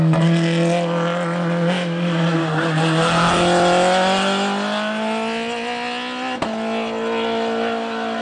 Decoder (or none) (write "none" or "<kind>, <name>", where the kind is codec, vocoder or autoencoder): none